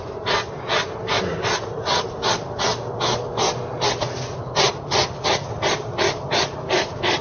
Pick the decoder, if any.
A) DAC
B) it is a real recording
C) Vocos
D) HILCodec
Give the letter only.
B